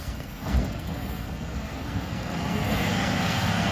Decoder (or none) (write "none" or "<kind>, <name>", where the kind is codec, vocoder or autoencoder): codec, SNAC